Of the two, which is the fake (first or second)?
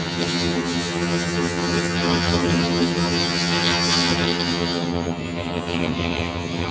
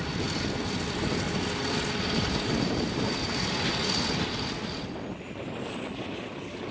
first